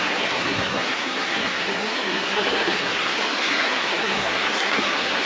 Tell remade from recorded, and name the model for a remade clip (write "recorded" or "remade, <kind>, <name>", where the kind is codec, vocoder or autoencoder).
remade, codec, SNAC